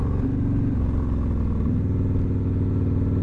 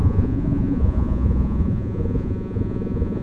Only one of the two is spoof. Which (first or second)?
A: second